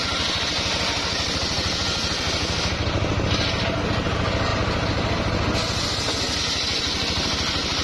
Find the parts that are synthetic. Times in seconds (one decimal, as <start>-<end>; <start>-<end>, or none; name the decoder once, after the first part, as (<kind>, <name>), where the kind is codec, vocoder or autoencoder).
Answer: none